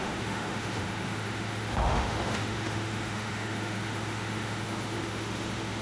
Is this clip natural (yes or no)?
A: no